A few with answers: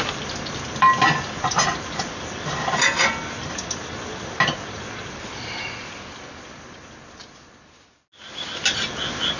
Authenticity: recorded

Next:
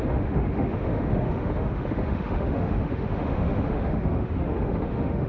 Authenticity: remade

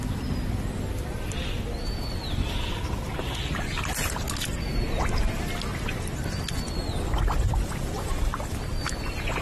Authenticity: recorded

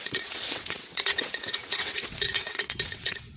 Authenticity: remade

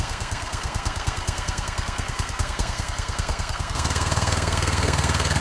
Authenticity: remade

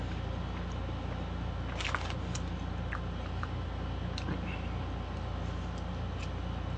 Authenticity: recorded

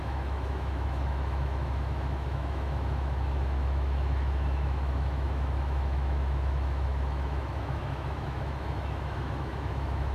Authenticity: remade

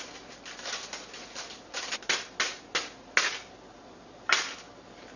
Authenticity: recorded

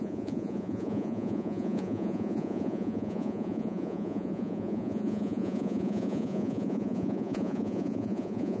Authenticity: remade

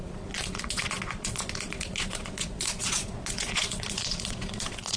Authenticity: remade